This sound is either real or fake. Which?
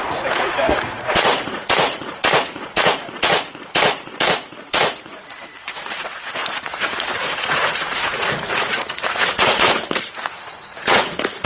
fake